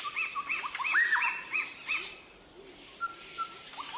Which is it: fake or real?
real